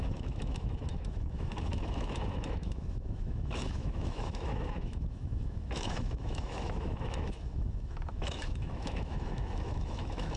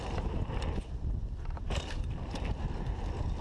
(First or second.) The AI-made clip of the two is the first